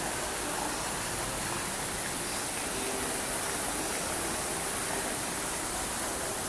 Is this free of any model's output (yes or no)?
yes